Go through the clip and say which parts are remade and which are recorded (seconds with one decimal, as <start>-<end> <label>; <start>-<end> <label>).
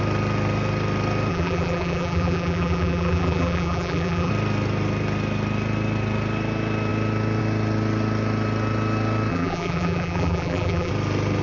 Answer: 0.0-1.3 recorded; 1.3-4.3 remade; 4.3-9.3 recorded; 9.3-10.9 remade; 10.9-11.4 recorded